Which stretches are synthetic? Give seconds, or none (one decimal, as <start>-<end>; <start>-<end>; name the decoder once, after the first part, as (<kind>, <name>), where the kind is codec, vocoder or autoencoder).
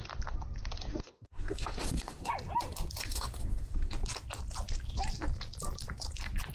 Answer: 0.9-2.3 (autoencoder, DAC-VAE); 3.0-3.9